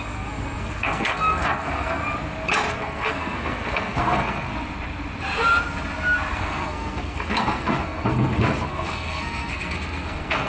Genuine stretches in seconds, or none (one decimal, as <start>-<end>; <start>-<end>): 2.0-2.7; 4.5-6.3